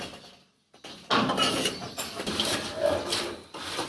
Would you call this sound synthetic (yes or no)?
no